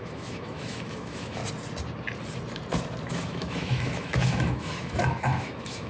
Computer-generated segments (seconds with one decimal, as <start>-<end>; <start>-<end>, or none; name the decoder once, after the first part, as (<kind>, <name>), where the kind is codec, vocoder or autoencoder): 0.0-1.4 (autoencoder, DAC-VAE); 3.1-5.9